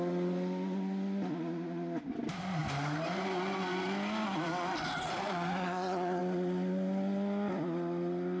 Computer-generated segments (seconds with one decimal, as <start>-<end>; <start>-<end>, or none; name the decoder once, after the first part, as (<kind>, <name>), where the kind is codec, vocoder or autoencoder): none